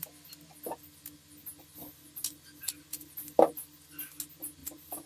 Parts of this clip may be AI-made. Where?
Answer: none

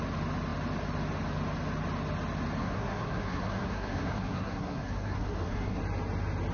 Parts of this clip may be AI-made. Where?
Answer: 2.6-5.8

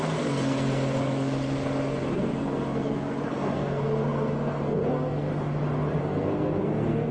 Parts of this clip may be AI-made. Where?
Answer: 0.0-5.3; 6.0-7.1

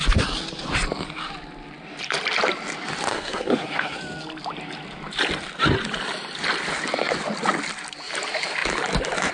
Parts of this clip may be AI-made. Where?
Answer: 3.1-4.0